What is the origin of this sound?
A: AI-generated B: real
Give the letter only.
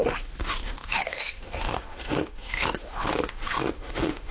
A